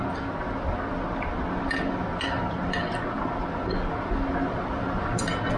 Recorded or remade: recorded